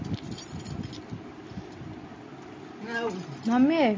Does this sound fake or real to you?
real